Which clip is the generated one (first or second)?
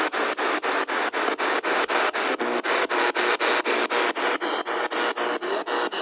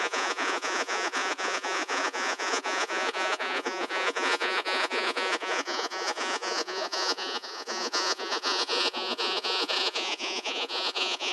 second